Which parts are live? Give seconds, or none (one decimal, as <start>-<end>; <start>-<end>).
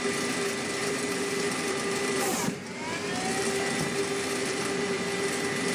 0.0-0.8; 2.7-4.4; 5.0-5.7